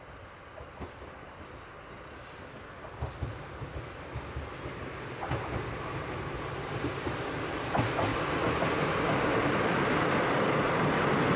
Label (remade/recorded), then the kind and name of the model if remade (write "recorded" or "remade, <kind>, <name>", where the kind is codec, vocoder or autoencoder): recorded